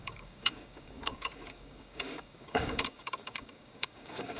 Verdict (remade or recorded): remade